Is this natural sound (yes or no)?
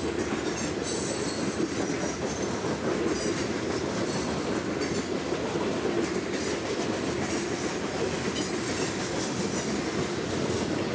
yes